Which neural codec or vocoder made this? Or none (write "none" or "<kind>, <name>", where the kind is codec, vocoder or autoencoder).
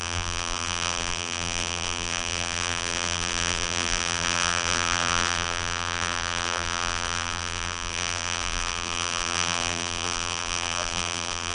vocoder, BigVGAN v2